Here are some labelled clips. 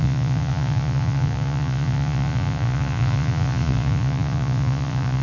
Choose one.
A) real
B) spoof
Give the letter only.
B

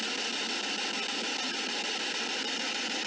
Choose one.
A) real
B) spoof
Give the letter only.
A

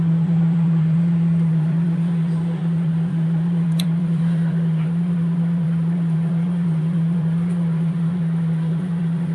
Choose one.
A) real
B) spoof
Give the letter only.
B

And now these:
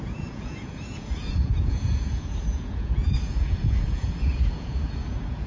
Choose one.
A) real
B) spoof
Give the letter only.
B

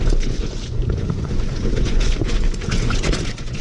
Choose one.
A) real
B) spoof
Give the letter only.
B